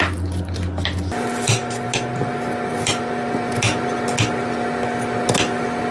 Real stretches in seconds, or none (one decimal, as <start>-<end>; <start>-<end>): 0.0-5.9